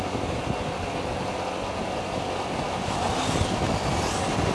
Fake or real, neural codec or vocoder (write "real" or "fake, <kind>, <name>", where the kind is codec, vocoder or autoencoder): real